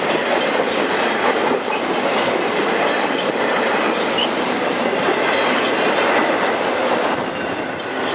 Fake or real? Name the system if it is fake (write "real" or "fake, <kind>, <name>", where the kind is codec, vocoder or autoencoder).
real